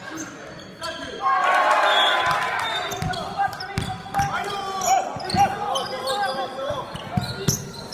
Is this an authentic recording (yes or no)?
yes